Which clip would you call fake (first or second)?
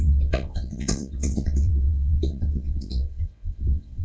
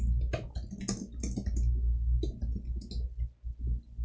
first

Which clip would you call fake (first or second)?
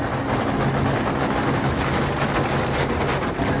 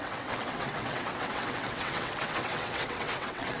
second